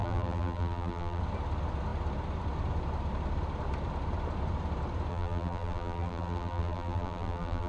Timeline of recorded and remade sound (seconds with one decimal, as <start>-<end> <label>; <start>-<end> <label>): 0.0-1.2 remade; 1.2-5.1 recorded; 5.1-7.7 remade